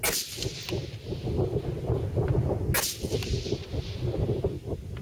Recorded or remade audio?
recorded